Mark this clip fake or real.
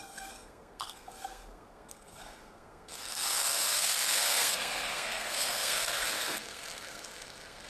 fake